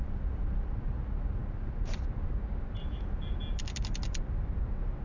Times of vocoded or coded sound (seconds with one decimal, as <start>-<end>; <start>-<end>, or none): none